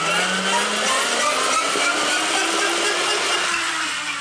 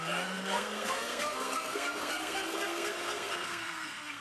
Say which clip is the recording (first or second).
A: first